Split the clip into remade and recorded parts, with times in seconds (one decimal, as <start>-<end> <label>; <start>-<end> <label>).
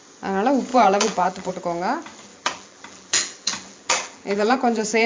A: 0.0-0.7 recorded; 0.7-1.5 remade; 1.5-2.3 recorded; 2.3-5.1 remade